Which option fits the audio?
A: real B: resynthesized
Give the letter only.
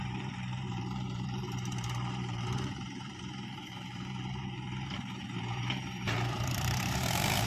B